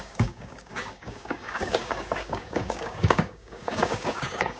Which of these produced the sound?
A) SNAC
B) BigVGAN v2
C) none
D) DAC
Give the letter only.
D